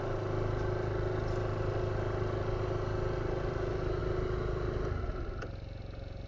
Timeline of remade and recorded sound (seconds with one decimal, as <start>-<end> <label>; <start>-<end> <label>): 0.0-6.3 recorded